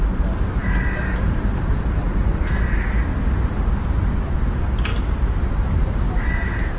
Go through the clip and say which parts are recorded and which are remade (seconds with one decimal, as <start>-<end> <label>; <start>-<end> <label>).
0.0-6.8 recorded